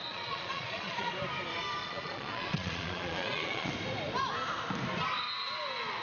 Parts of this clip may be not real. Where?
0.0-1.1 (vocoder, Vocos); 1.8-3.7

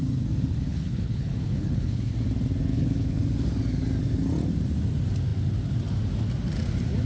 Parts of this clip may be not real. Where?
0.7-2.1 (codec, HILCodec); 2.7-3.2

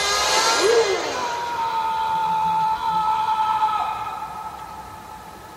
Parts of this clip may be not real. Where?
1.2-1.7 (vocoder, BigVGAN v2)

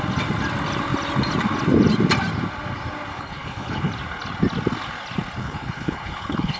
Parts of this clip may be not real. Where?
3.1-3.9 (codec, HILCodec); 5.4-6.6

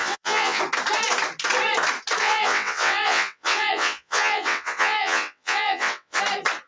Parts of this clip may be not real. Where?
0.0-0.6 (vocoder, WaveNeXt); 2.2-6.2

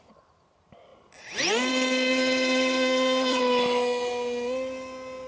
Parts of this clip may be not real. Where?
2.1-3.4 (vocoder, HiFi-GAN)

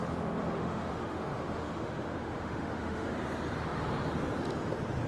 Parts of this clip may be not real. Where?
0.0-3.1 (autoencoder, DAC-VAE)

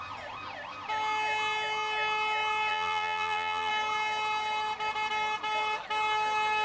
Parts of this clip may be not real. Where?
2.7-3.7 (vocoder, BigVGAN v2)